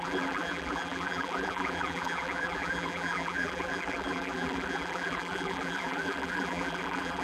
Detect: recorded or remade remade